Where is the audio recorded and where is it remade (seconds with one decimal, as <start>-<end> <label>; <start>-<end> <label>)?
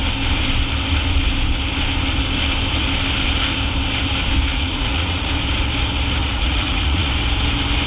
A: 0.0-4.5 recorded; 4.5-5.3 remade; 5.3-6.2 recorded; 6.2-7.1 remade; 7.1-7.9 recorded